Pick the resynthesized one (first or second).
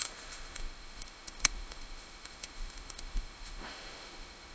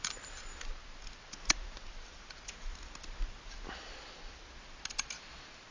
first